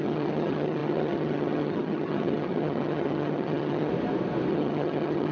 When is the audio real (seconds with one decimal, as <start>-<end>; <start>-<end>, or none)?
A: 3.9-4.5